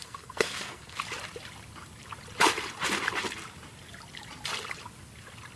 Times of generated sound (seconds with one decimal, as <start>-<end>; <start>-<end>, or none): 0.0-1.0